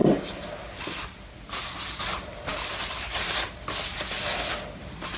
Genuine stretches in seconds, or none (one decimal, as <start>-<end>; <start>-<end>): 0.0-5.2